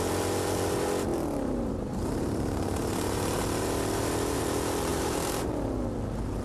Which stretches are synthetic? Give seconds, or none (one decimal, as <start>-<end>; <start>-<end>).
1.1-3.4; 4.9-5.5